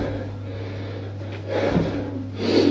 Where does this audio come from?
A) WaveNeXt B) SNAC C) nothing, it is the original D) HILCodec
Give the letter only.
C